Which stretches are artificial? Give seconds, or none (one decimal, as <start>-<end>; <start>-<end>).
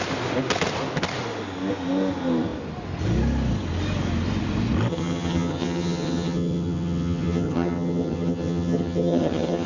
4.9-9.7